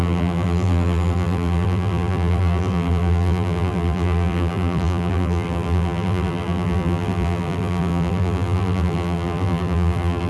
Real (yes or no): no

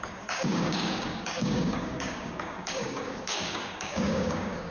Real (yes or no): no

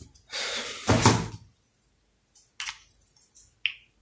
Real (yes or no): yes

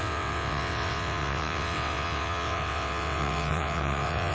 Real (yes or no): no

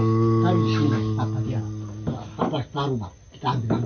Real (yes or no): yes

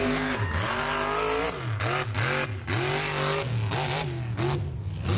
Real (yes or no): yes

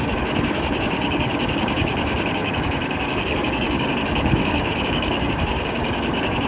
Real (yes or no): no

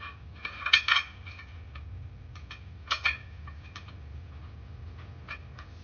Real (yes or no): yes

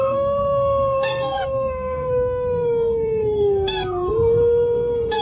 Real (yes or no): no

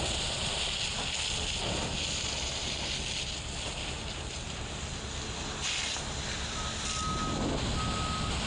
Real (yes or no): yes